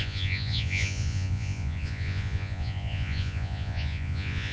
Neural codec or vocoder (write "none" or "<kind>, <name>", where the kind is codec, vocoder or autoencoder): vocoder, Vocos